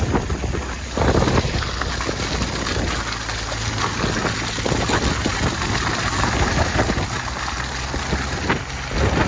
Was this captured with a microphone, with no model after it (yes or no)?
yes